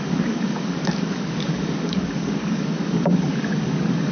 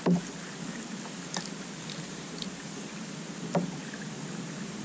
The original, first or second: second